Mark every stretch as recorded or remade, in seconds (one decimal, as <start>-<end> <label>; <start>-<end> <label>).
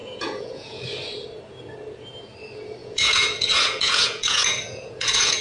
0.0-0.8 remade; 0.8-2.8 recorded; 2.8-5.4 remade